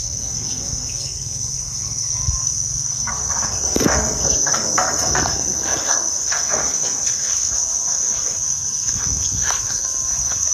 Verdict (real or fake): fake